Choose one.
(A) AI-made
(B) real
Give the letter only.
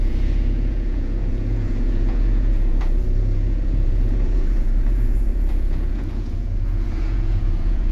A